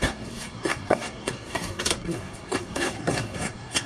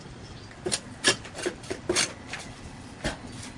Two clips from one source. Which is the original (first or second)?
second